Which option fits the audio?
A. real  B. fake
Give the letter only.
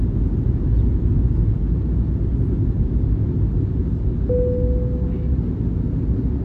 A